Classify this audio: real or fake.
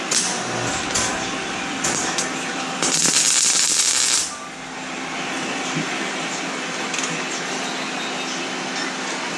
real